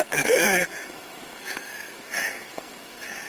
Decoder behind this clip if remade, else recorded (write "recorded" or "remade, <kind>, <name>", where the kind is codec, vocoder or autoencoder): remade, codec, SNAC